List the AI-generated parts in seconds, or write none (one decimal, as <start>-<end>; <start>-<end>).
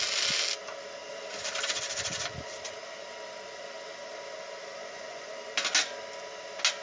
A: 4.8-5.3